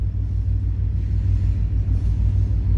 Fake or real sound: real